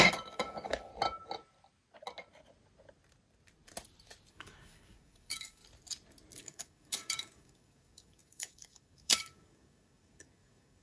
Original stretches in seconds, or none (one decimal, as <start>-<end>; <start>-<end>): 0.9-4.3; 5.6-6.4